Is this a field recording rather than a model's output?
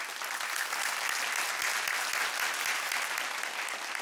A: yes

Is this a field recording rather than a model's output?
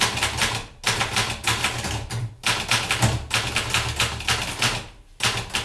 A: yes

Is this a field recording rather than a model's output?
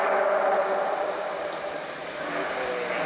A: yes